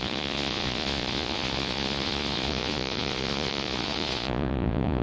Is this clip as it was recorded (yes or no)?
no